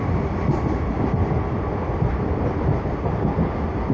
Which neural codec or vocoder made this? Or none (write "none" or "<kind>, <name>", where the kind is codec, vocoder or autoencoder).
none